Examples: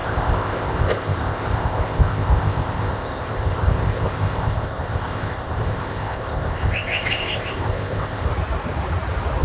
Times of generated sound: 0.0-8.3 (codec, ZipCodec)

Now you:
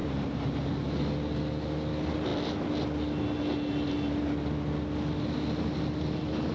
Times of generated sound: 0.0-0.6 (vocoder, BigVGAN v2)

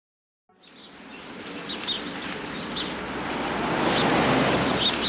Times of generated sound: none

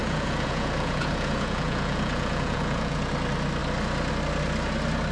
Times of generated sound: 0.0-3.1 (vocoder, Vocos)

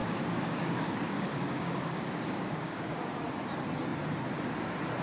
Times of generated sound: 0.0-3.0 (codec, DAC)

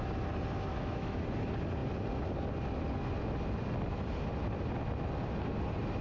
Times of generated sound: 0.7-1.2 (autoencoder, DAC-VAE)

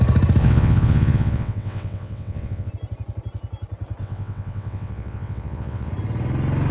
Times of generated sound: 0.4-2.7 (vocoder, WaveNeXt); 4.0-5.9

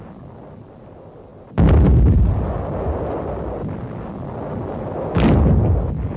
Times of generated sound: none